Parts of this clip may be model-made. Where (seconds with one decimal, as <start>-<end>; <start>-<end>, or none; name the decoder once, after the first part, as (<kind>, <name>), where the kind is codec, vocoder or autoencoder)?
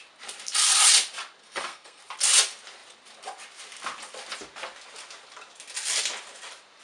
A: 1.4-2.0 (codec, SNAC)